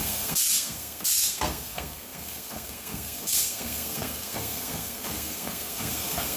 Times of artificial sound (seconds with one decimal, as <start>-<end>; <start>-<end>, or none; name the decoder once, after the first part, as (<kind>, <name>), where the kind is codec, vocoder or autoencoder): 0.0-6.4 (codec, SNAC)